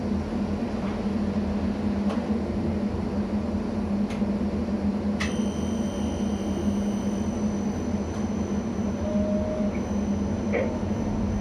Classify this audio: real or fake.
real